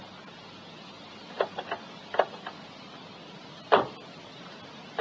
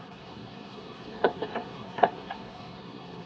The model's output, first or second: second